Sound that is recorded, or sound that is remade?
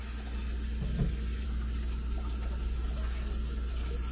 recorded